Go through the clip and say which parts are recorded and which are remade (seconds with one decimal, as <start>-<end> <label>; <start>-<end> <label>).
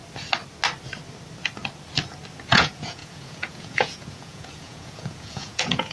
0.0-2.5 recorded; 2.5-5.9 remade